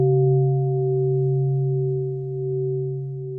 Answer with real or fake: real